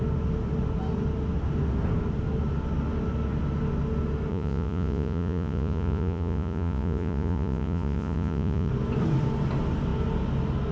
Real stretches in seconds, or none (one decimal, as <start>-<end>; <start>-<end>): 0.0-4.3; 8.7-10.7